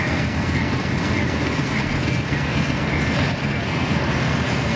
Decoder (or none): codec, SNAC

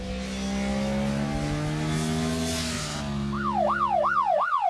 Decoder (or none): none